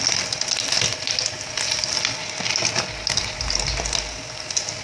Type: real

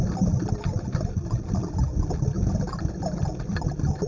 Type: real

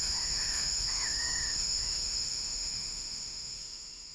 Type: fake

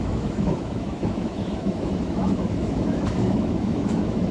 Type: fake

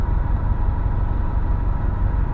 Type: real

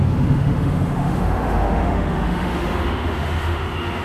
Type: fake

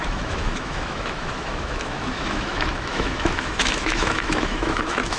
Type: fake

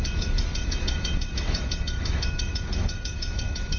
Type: fake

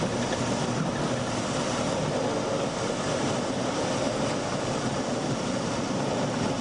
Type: real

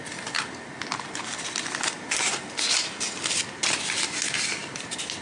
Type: real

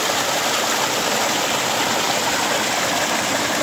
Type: real